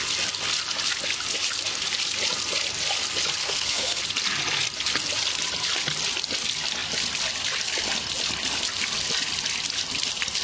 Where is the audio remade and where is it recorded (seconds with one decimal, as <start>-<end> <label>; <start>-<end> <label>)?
0.0-3.4 recorded; 3.4-4.0 remade; 4.0-10.4 recorded